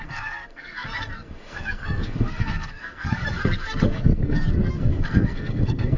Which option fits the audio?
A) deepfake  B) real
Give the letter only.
A